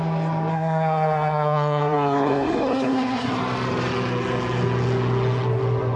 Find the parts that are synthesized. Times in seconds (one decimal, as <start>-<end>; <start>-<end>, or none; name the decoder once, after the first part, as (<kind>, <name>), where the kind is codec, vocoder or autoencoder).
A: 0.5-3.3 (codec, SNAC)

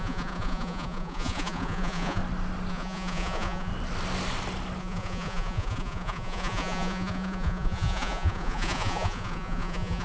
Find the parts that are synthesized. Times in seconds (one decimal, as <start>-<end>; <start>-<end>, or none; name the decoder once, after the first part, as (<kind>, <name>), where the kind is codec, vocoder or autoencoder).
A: 0.0-2.2 (vocoder, Vocos); 2.7-3.7; 4.8-10.0

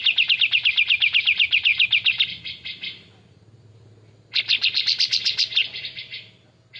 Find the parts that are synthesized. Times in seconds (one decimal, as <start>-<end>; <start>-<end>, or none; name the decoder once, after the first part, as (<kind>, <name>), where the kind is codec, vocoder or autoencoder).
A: 5.6-6.8 (vocoder, BigVGAN v2)

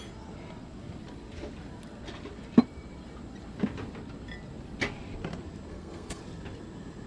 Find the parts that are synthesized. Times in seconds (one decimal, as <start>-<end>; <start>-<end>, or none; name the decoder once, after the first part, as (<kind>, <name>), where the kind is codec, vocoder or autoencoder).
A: 5.7-6.2 (codec, SNAC)

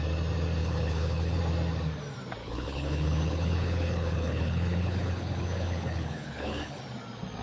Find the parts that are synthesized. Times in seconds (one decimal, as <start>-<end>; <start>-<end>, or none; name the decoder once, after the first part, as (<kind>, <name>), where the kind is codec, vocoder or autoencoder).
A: 0.6-1.4 (codec, HILCodec); 2.4-6.8

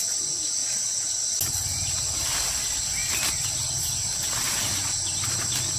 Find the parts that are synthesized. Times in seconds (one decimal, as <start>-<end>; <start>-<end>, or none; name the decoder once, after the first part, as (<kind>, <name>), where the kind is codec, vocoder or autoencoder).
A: none